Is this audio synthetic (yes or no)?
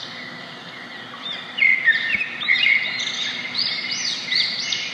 yes